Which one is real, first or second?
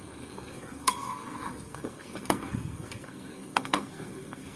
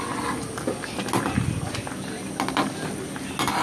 second